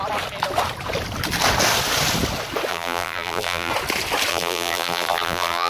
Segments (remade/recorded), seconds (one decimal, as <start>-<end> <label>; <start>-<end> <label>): 0.0-2.7 recorded; 2.7-3.7 remade; 3.7-4.3 recorded; 4.3-5.7 remade